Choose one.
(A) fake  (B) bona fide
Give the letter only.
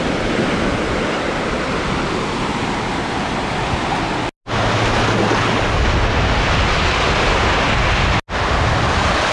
B